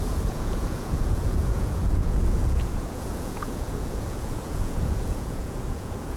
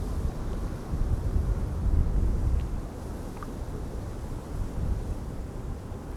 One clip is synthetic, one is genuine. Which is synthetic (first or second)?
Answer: first